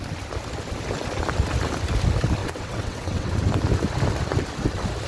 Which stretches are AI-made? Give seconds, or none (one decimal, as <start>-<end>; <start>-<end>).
2.4-3.3